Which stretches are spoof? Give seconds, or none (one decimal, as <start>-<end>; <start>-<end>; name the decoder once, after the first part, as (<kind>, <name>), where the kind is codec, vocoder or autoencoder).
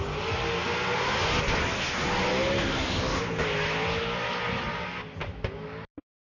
5.3-6.3 (autoencoder, DAC-VAE)